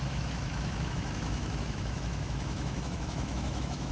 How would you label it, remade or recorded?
remade